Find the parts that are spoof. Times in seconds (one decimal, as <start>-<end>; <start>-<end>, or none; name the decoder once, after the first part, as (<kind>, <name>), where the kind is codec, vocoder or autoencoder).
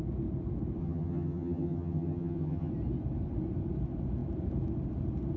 0.8-2.7 (vocoder, HiFi-GAN)